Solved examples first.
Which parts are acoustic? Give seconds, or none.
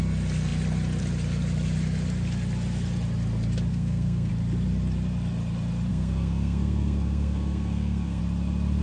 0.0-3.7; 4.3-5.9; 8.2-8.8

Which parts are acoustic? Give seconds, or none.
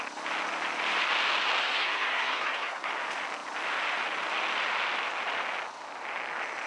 0.0-1.6; 2.9-6.7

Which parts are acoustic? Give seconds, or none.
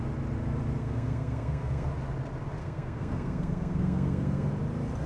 0.0-0.8; 1.9-2.6; 4.5-5.1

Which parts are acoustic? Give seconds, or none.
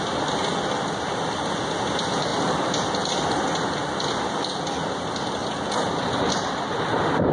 0.0-7.3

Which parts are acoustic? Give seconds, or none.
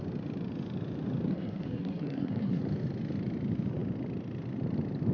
0.0-1.3; 2.6-5.1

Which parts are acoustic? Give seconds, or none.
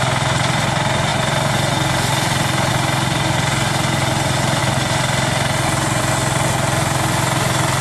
0.0-7.8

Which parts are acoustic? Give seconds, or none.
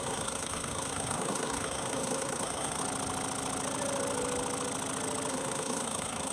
2.8-5.3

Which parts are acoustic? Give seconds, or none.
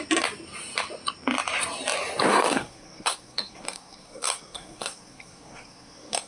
0.0-2.3